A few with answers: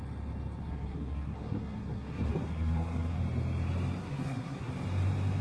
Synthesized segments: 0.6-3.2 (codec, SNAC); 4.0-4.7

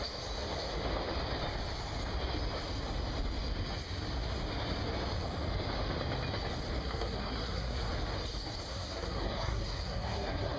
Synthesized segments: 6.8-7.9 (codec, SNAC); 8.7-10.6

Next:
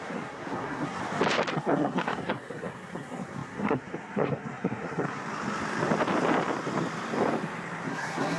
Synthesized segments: 0.0-1.0 (codec, SNAC); 1.5-5.2; 7.9-8.4